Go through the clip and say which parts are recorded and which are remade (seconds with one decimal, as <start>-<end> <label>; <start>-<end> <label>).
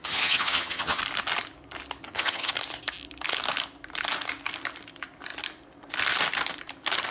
0.0-1.0 remade; 1.0-2.0 recorded; 2.0-2.5 remade; 2.5-7.1 recorded